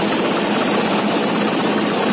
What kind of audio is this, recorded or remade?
recorded